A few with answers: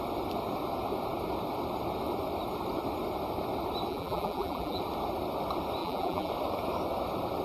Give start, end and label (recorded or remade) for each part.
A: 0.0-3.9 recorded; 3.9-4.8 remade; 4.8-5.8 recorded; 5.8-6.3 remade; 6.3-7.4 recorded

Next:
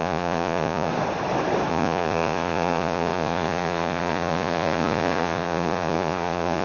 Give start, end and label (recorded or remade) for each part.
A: 0.0-0.9 remade; 0.9-1.7 recorded; 1.7-6.6 remade

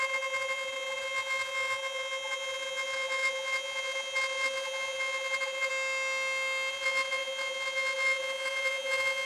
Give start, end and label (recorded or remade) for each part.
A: 0.0-5.7 remade; 5.7-6.7 recorded; 6.7-9.3 remade

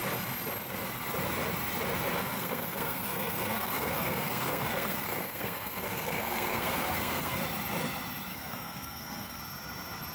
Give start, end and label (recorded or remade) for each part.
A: 0.0-2.2 recorded; 2.2-7.4 remade; 7.4-8.3 recorded; 8.3-9.4 remade; 9.4-10.1 recorded

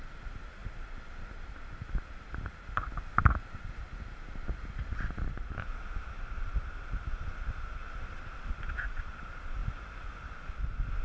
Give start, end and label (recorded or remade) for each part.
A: 0.0-0.6 recorded; 0.6-1.7 remade; 1.7-7.8 recorded; 7.8-8.5 remade; 8.5-11.0 recorded